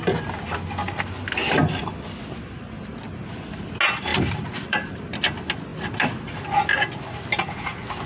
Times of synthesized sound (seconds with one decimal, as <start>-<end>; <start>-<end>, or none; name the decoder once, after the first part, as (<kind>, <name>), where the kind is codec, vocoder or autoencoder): 4.1-4.9 (vocoder, BigVGAN v2)